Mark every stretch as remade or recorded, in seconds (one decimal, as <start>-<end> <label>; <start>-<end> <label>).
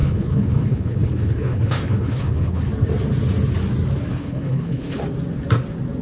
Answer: 0.0-2.7 remade; 2.7-4.1 recorded; 4.1-5.0 remade; 5.0-6.0 recorded